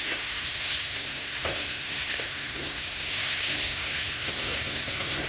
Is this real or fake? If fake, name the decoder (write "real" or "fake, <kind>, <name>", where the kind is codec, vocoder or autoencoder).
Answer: fake, codec, SNAC